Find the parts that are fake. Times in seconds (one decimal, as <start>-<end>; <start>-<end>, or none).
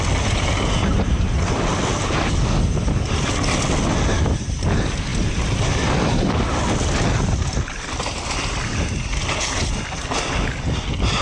none